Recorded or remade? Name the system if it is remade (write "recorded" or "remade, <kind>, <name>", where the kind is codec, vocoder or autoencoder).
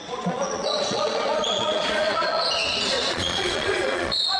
remade, vocoder, Vocos